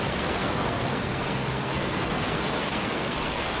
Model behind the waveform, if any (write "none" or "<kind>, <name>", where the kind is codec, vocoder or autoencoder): codec, SNAC